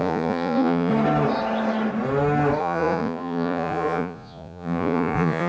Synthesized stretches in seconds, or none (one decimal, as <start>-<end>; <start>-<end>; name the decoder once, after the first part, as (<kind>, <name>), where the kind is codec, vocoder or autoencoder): 0.0-0.9 (vocoder, Vocos); 2.6-5.5